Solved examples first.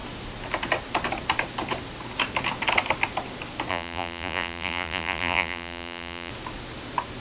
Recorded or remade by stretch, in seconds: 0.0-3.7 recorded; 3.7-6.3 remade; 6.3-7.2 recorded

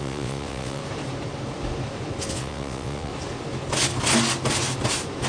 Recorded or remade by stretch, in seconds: 0.0-0.8 remade; 0.8-2.3 recorded; 2.3-3.1 remade; 3.1-5.3 recorded